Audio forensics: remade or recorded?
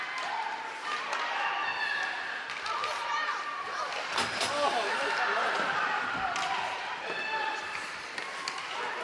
remade